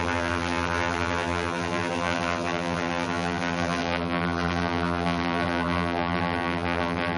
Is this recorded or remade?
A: remade